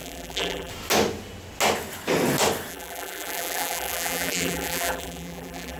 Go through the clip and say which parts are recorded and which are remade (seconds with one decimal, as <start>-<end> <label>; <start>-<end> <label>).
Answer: 0.0-0.7 remade; 0.7-2.7 recorded; 2.7-5.8 remade